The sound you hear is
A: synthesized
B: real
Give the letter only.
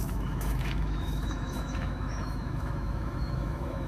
A